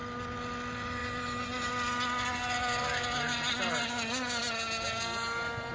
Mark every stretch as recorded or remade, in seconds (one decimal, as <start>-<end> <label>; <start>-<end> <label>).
0.0-5.7 recorded